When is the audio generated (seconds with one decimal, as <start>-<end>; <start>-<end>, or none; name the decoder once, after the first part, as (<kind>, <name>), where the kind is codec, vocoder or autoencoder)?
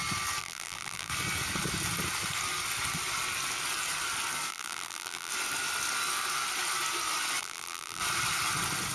0.4-1.1 (vocoder, BigVGAN v2); 4.5-5.3; 7.4-8.0